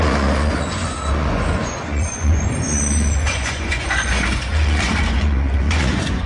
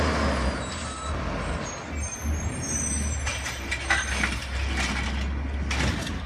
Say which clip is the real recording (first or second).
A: second